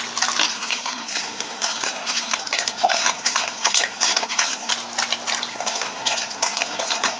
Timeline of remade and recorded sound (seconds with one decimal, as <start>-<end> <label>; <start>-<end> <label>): 0.0-0.5 recorded; 0.5-4.7 remade; 4.7-5.5 recorded; 5.5-7.2 remade